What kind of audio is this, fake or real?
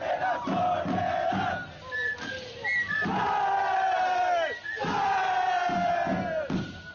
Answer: real